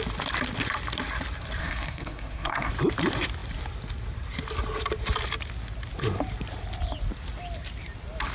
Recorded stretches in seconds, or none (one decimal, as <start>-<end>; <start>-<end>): 0.0-1.6; 2.7-8.3